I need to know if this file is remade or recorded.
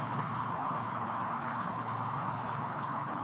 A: remade